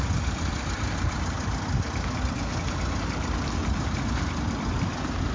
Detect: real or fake real